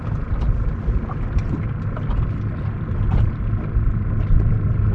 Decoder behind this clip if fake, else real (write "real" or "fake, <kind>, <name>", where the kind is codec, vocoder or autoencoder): real